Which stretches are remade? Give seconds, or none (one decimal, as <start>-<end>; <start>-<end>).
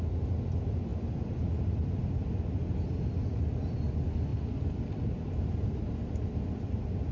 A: 0.9-2.1